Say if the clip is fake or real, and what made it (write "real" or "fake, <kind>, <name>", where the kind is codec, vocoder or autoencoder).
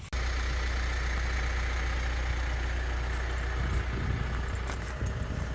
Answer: real